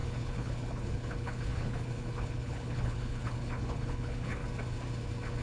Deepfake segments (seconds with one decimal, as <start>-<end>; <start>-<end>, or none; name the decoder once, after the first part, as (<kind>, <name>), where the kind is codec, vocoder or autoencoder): 0.0-4.4 (codec, HILCodec)

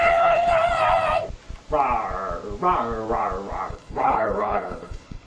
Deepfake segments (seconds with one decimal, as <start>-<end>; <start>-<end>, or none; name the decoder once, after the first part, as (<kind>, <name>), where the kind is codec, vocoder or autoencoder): 0.0-0.5 (codec, HILCodec); 3.7-5.3